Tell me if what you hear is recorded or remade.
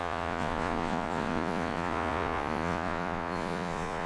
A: remade